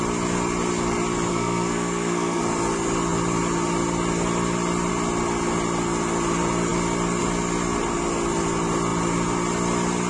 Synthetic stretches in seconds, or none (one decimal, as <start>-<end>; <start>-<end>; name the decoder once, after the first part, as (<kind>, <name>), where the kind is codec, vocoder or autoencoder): 1.3-2.4 (codec, SNAC)